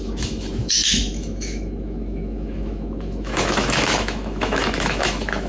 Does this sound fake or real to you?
fake